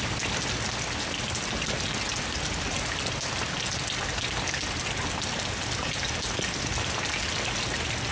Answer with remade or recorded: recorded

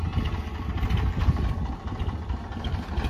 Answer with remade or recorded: recorded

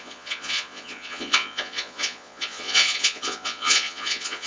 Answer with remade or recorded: remade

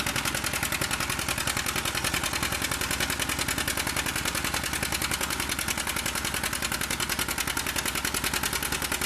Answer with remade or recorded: recorded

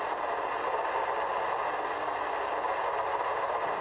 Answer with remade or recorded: recorded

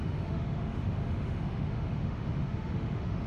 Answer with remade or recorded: remade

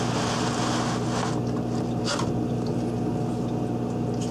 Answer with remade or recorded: recorded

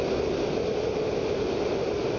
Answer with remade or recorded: recorded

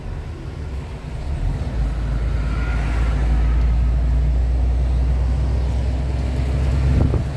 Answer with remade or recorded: recorded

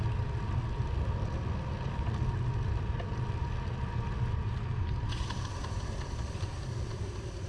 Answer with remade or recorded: recorded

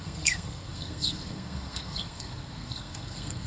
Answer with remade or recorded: remade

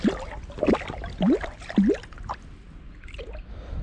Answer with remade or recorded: recorded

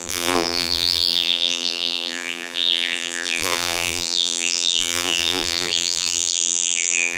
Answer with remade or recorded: remade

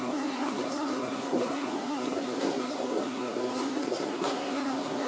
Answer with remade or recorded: remade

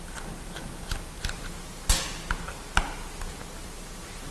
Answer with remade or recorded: recorded